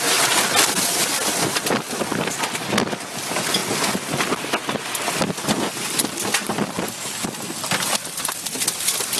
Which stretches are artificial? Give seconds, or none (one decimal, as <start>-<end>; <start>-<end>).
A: none